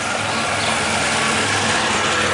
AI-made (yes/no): no